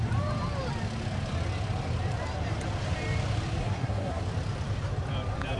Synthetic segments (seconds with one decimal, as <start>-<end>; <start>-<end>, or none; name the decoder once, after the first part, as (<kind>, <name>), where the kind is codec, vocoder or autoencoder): 3.6-4.2 (codec, SNAC)